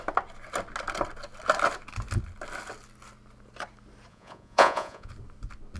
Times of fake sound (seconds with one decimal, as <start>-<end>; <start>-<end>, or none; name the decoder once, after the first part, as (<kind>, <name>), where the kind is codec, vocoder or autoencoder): 4.1-5.1 (vocoder, Vocos)